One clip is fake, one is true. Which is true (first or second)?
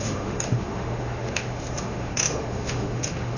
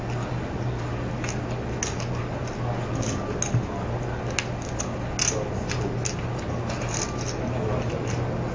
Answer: second